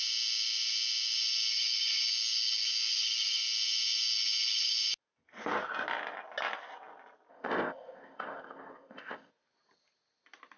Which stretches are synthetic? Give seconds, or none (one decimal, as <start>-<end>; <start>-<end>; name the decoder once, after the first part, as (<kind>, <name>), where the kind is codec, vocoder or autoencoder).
7.3-9.3 (codec, ZipCodec)